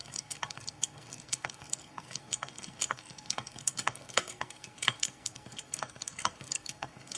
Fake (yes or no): yes